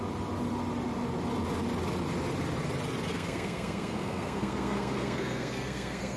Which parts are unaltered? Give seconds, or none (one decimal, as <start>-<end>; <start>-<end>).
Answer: 0.0-3.1